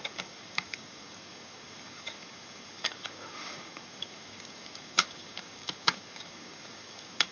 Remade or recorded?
remade